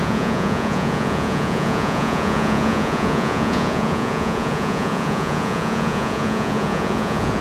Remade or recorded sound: remade